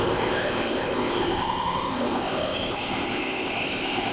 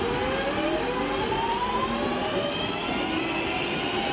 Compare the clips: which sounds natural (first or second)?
second